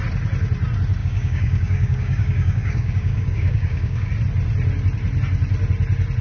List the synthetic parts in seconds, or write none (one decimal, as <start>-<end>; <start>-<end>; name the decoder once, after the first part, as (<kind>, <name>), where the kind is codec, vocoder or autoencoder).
1.0-4.1 (codec, DAC)